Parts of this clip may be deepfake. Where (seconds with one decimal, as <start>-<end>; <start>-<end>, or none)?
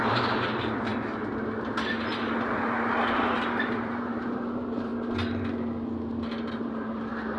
0.0-0.9; 3.1-4.9; 6.5-7.4